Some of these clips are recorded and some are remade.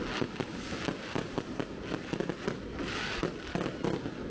recorded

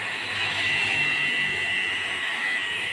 remade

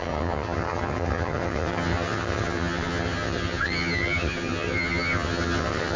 remade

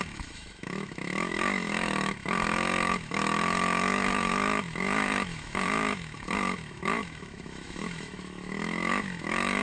remade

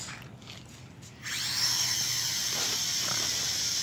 recorded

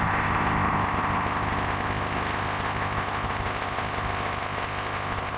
remade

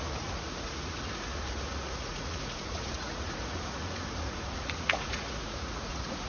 remade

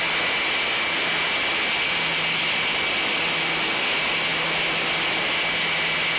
recorded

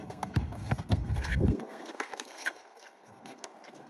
remade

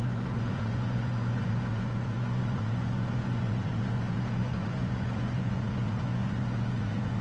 remade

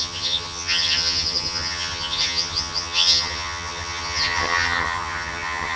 remade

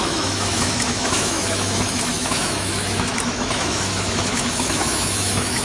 remade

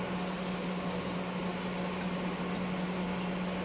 recorded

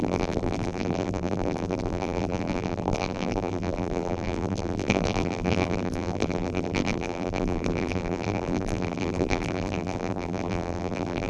remade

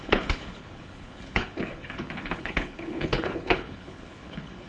remade